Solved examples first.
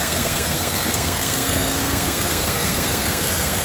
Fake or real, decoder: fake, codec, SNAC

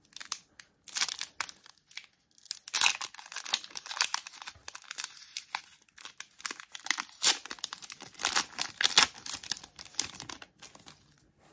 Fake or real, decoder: real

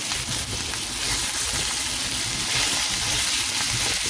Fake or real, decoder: real